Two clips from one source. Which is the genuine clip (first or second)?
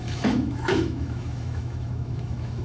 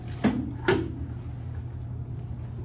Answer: second